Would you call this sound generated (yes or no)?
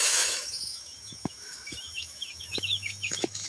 yes